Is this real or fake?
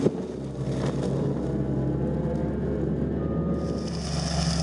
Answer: real